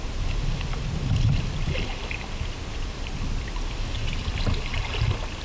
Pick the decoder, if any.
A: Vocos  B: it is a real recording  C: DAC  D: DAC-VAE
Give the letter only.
B